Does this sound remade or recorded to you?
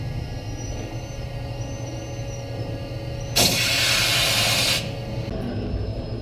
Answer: recorded